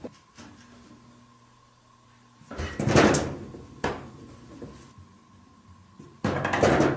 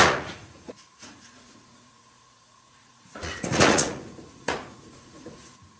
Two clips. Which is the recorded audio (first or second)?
first